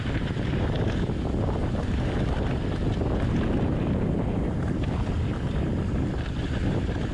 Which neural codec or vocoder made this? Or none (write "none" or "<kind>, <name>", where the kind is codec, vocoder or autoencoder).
none